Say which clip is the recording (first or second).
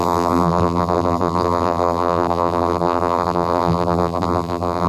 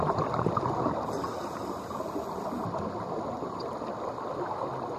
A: second